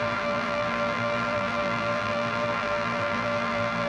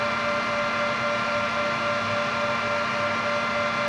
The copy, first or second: first